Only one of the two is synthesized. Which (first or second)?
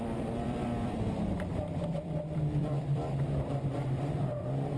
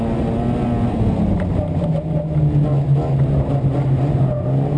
first